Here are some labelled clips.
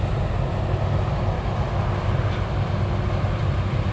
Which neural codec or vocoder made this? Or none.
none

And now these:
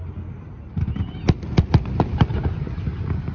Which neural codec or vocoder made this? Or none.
none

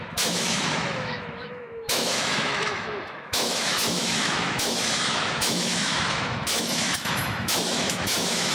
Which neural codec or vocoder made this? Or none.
autoencoder, DAC-VAE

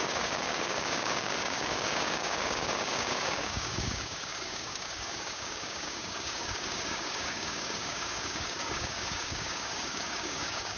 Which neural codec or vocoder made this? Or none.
codec, DAC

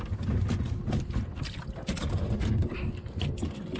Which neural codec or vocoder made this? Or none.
none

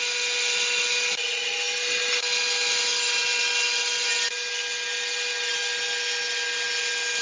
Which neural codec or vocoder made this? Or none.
none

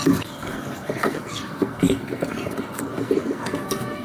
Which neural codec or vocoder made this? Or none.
codec, SNAC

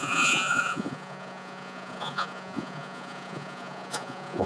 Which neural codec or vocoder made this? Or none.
vocoder, Vocos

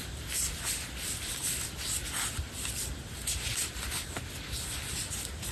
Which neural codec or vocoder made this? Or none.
none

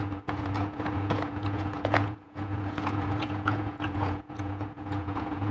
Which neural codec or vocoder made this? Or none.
vocoder, Vocos